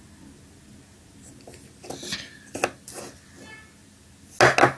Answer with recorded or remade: recorded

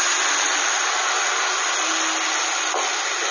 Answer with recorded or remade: recorded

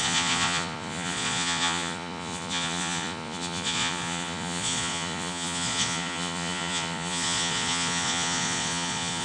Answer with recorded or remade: remade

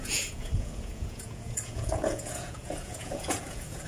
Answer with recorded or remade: remade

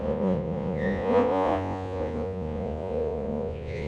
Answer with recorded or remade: remade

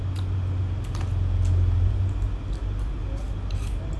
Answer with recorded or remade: recorded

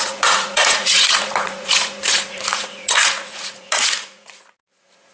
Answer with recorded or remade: remade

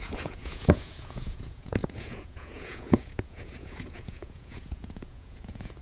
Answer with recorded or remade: remade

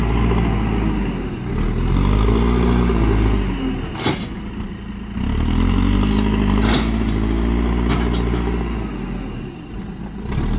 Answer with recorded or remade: recorded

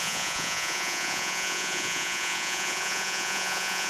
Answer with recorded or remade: remade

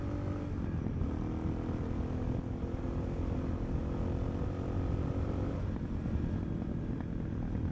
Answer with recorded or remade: recorded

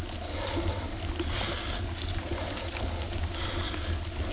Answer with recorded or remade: recorded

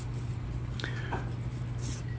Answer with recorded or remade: recorded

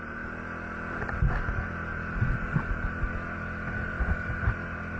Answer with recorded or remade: recorded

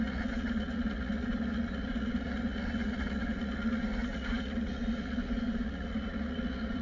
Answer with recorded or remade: remade